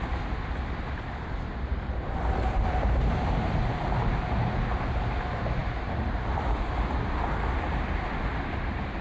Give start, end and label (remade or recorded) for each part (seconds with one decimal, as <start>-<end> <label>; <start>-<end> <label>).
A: 0.0-1.7 recorded; 1.7-3.1 remade; 3.1-5.6 recorded; 5.6-6.1 remade; 6.1-9.0 recorded